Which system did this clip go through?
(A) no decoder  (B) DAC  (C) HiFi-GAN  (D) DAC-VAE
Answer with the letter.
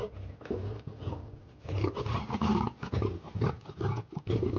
A